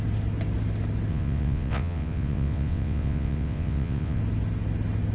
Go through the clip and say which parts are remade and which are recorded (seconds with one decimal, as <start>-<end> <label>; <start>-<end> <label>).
0.0-1.1 recorded; 1.1-4.2 remade; 4.2-5.1 recorded